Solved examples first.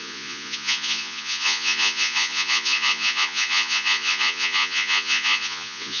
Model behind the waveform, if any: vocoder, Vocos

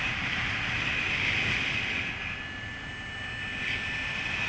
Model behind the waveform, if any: none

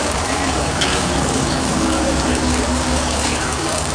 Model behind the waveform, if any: codec, DAC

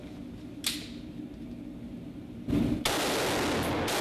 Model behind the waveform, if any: none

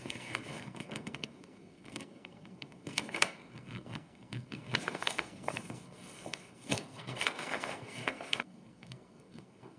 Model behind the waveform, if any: codec, SNAC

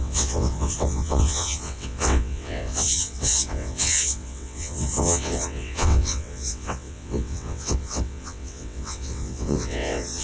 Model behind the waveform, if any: vocoder, WaveNeXt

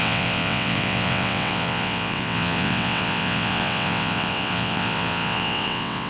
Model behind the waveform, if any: vocoder, WaveNeXt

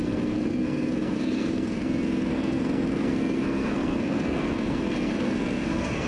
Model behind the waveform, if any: codec, SNAC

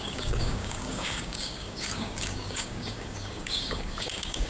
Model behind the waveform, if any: codec, DAC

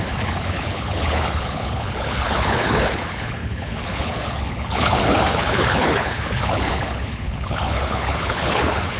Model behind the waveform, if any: codec, HILCodec